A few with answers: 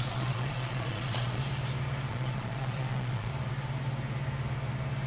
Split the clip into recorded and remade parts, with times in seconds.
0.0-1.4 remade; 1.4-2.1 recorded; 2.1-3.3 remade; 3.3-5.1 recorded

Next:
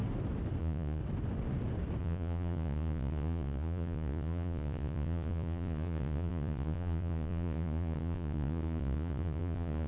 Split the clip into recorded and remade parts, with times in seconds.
0.0-0.6 recorded; 0.6-1.0 remade; 1.0-2.0 recorded; 2.0-9.9 remade